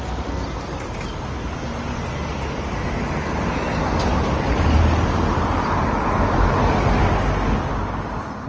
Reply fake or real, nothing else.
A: real